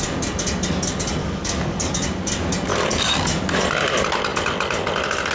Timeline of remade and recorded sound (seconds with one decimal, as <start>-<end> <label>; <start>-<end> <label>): 0.0-1.2 recorded; 1.2-1.9 remade; 1.9-2.7 recorded; 2.7-3.3 remade; 3.3-5.3 recorded